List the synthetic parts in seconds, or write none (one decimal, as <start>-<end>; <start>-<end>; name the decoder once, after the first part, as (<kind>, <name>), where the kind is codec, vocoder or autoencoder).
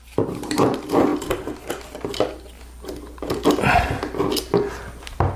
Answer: none